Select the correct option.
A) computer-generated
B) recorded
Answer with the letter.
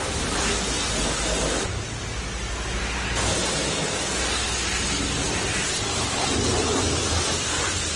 B